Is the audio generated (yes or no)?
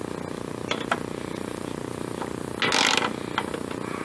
no